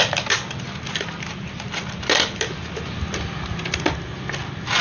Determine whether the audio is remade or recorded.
recorded